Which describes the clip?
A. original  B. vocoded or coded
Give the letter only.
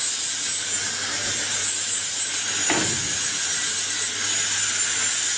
A